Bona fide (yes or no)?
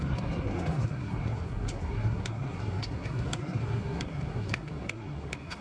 no